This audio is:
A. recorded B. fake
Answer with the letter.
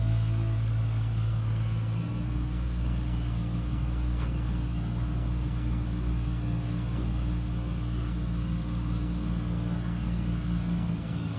B